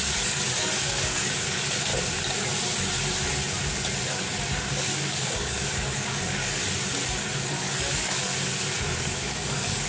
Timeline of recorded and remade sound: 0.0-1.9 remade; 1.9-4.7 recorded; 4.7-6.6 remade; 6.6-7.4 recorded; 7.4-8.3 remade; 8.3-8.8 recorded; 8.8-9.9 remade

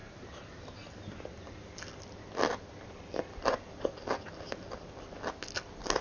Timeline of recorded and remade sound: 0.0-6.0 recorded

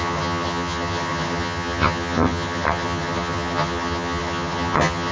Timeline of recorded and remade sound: 0.0-5.1 remade

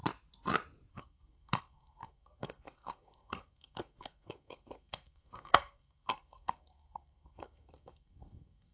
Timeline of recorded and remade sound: 0.0-0.9 recorded; 0.9-8.7 remade